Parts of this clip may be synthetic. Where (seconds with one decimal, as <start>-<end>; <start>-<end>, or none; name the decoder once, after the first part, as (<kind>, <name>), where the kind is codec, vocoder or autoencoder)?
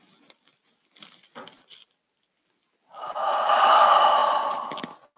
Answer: none